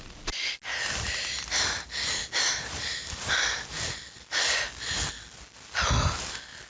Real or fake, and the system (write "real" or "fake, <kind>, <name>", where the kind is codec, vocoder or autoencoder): real